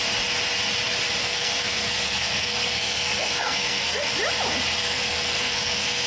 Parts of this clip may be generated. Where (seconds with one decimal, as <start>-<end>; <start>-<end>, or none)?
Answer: 1.2-4.1; 4.8-6.1